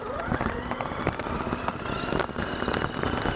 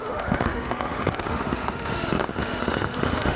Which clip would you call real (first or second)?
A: first